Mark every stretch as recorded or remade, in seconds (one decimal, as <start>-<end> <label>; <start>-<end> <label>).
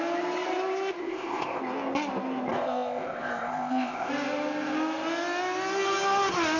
0.0-1.0 recorded; 1.0-1.6 remade; 1.6-2.5 recorded; 2.5-4.1 remade; 4.1-6.6 recorded